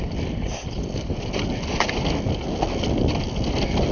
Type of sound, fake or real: real